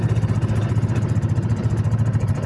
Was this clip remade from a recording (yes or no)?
no